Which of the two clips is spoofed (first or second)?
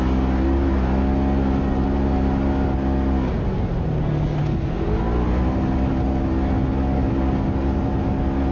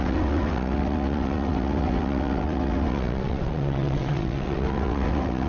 second